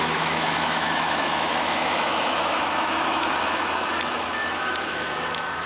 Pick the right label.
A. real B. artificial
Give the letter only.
B